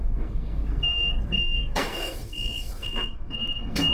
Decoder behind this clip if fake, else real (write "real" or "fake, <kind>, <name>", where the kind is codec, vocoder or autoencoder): fake, codec, SNAC